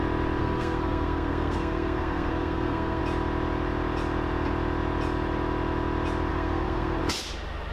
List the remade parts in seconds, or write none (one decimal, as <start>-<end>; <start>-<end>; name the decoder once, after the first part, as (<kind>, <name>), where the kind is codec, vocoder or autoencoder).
0.4-3.0 (codec, SNAC); 6.3-7.0